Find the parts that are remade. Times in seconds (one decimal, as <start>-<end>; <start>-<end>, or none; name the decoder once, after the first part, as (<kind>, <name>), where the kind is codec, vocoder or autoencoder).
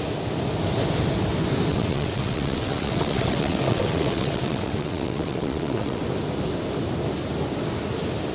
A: 1.7-6.0 (vocoder, WaveNeXt)